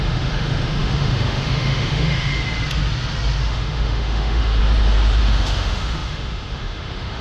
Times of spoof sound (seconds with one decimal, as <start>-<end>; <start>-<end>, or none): 0.0-2.4; 3.4-4.6; 5.2-7.2